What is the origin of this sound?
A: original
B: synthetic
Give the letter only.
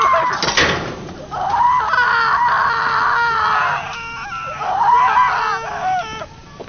A